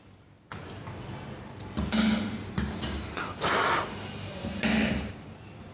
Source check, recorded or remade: recorded